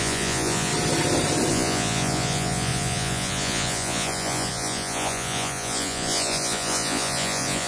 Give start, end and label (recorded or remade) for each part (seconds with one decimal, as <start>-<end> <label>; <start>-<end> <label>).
0.0-0.7 remade; 0.7-1.5 recorded; 1.5-7.7 remade